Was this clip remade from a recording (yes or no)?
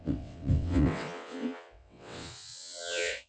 yes